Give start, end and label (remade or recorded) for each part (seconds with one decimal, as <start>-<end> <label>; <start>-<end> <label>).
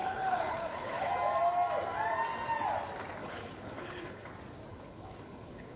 0.0-1.1 remade; 1.1-3.2 recorded; 3.2-4.3 remade; 4.3-4.7 recorded; 4.7-5.8 remade